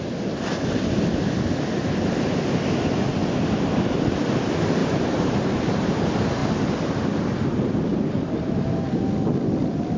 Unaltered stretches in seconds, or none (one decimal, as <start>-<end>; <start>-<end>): 0.0-4.8; 6.0-7.9; 9.0-10.0